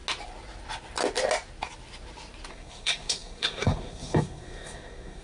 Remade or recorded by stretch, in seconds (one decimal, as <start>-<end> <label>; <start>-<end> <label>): 0.0-2.5 recorded; 2.5-5.2 remade